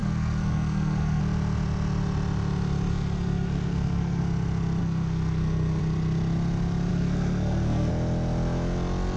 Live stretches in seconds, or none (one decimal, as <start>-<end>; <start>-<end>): 1.2-2.9; 4.2-4.8; 5.8-6.9; 7.9-9.2